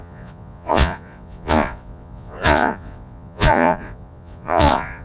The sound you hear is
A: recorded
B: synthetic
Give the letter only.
B